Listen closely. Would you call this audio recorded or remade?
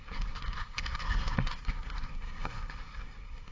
remade